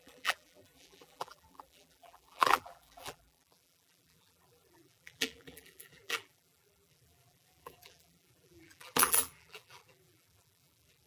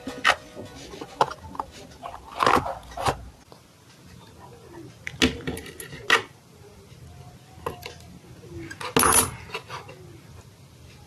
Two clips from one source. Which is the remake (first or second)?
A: first